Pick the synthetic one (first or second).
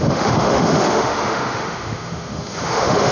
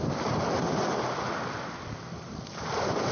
first